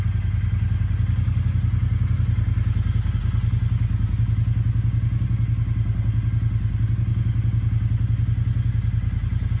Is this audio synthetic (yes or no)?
no